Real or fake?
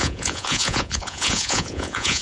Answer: fake